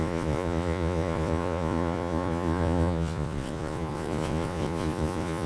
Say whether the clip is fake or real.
fake